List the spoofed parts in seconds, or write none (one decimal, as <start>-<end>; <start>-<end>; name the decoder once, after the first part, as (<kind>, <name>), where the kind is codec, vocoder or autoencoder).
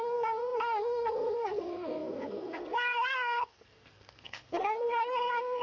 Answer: 0.0-5.6 (codec, SNAC)